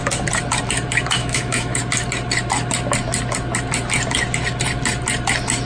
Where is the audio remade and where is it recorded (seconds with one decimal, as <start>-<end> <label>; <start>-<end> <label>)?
0.0-1.2 recorded; 1.2-1.8 remade; 1.8-5.7 recorded